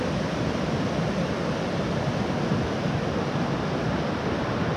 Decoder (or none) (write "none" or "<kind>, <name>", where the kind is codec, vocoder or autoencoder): none